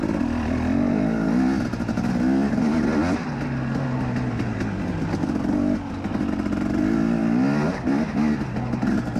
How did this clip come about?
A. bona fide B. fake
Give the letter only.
A